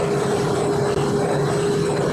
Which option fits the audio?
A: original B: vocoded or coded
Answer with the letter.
A